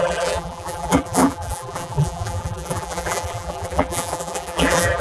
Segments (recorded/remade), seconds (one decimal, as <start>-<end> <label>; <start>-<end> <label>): 0.0-5.0 remade